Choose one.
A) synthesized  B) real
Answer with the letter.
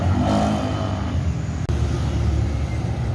B